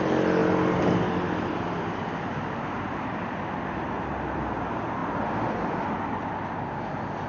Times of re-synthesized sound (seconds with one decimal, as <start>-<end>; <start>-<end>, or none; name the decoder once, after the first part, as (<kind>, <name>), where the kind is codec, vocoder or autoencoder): none